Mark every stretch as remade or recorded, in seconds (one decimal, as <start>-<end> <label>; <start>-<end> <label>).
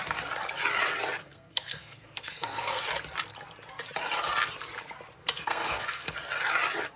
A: 0.0-1.2 recorded; 1.2-2.8 remade; 2.8-5.2 recorded; 5.2-6.1 remade; 6.1-7.0 recorded